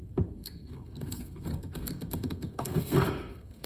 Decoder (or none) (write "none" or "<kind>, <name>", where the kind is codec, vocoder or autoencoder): codec, SNAC